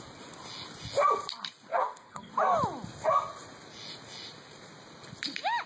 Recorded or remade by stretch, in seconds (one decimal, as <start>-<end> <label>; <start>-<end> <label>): 0.0-1.7 recorded; 1.7-2.3 remade; 2.3-5.7 recorded